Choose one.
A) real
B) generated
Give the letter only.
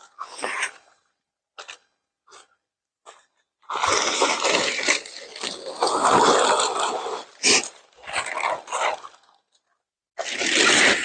A